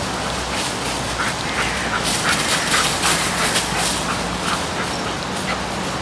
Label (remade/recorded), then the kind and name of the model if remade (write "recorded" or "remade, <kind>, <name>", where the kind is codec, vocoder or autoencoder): recorded